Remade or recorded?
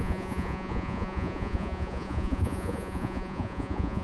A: remade